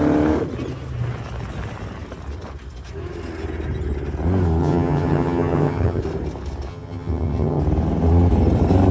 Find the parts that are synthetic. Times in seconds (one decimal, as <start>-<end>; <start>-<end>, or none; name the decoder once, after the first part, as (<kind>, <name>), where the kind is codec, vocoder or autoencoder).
4.6-6.0 (vocoder, HiFi-GAN); 6.7-7.6